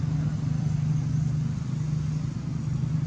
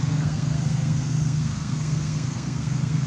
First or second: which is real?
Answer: first